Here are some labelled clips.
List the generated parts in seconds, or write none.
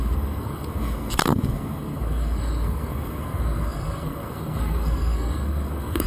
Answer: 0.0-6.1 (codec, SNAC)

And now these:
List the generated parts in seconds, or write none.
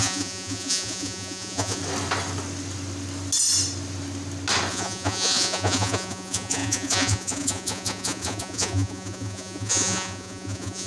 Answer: 0.0-1.8 (vocoder, Vocos); 4.7-10.9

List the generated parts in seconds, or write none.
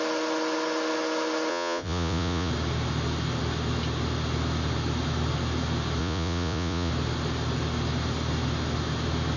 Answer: 1.5-2.5 (vocoder, Vocos); 6.0-6.9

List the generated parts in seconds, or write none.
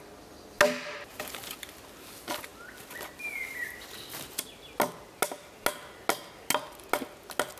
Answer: none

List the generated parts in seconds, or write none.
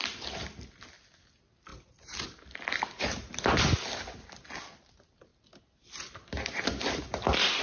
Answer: none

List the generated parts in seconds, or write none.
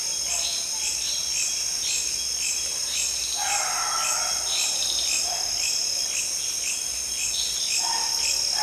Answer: none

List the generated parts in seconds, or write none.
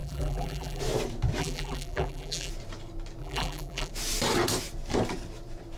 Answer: 0.0-0.8 (vocoder, BigVGAN v2); 1.4-2.5; 3.2-3.9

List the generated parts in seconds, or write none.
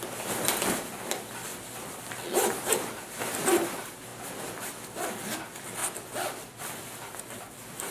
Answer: 1.5-2.7 (vocoder, BigVGAN v2)